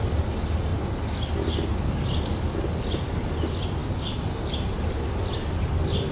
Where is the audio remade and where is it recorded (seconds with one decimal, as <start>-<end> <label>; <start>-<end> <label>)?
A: 0.0-6.1 recorded